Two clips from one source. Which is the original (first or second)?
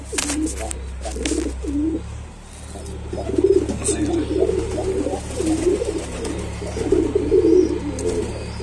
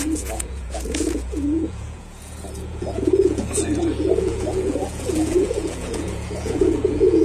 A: first